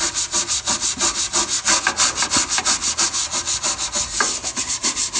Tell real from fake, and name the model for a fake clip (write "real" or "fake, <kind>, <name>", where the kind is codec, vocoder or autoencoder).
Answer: real